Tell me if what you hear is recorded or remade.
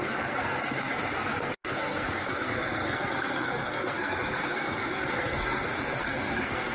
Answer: remade